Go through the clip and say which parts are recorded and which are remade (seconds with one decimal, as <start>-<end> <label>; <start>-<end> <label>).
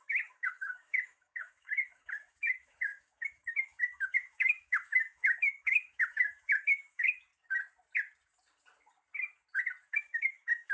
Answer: 0.0-7.3 remade; 7.3-9.9 recorded; 9.9-10.7 remade